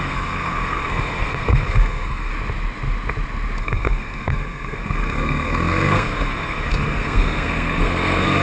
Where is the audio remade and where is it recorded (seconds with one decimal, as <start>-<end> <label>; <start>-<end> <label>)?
0.0-2.3 remade; 2.3-3.6 recorded; 3.6-8.4 remade